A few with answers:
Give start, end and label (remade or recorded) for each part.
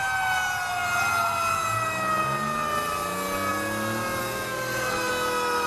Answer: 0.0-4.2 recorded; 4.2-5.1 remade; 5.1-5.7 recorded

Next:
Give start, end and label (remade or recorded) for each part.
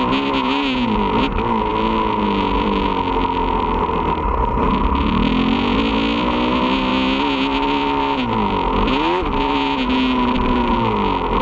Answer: 0.0-11.4 recorded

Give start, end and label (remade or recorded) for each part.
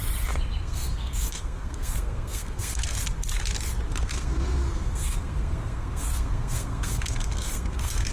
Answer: 0.0-0.6 recorded; 0.6-3.0 remade; 3.0-3.9 recorded; 3.9-8.1 remade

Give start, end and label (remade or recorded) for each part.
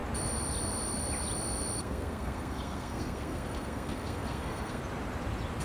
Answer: 0.0-1.8 recorded; 1.8-4.8 remade; 4.8-5.6 recorded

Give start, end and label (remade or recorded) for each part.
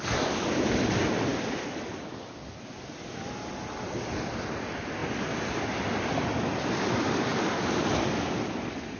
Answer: 0.0-9.0 recorded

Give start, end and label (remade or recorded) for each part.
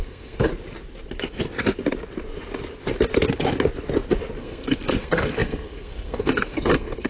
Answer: 0.0-0.5 remade; 0.5-4.4 recorded; 4.4-7.1 remade